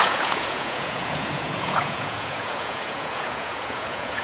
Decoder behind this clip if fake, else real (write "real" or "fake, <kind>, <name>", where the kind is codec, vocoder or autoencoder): fake, vocoder, Vocos